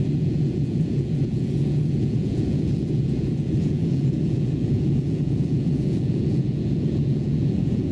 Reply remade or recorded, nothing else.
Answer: remade